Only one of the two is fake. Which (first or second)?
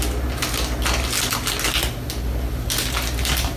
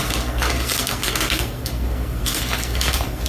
second